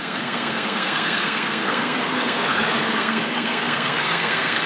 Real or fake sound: fake